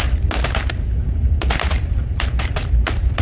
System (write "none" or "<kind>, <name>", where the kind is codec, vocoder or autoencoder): none